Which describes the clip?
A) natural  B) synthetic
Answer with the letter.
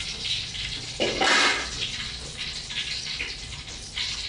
A